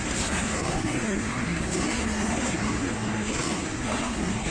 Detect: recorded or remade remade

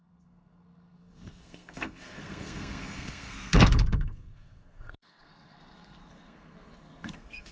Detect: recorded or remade remade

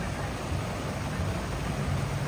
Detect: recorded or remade recorded